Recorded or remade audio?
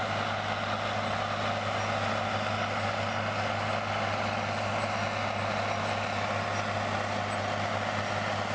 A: recorded